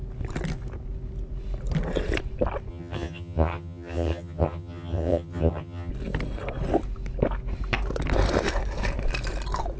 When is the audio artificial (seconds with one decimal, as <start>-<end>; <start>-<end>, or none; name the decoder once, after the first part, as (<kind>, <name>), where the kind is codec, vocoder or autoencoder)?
2.7-5.9 (vocoder, HiFi-GAN)